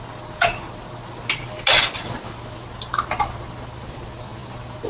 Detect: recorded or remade recorded